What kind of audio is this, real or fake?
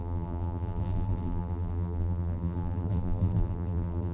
fake